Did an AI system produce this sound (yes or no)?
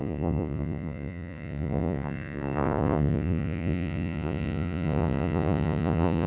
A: yes